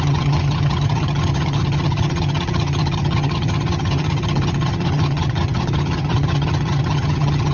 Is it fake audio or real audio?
fake